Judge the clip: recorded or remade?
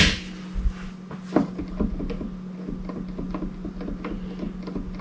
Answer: recorded